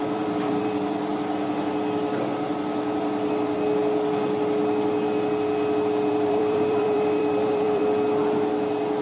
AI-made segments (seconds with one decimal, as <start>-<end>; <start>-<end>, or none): 0.0-1.1; 6.1-7.8